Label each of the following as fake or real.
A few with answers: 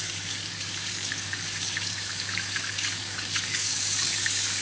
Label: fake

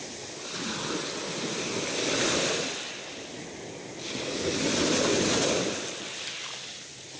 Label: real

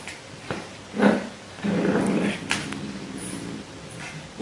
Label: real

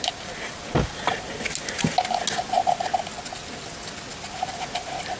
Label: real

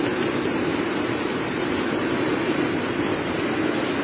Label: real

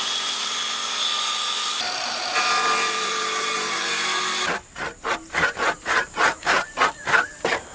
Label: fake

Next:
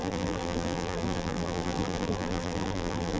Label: fake